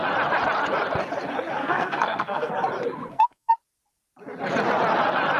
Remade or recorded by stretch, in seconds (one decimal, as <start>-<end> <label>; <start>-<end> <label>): 0.0-1.6 recorded; 1.6-2.5 remade; 2.5-3.0 recorded; 3.0-3.5 remade; 3.5-5.4 recorded